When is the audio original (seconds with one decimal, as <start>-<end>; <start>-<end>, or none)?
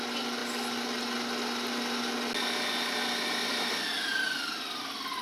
0.0-5.2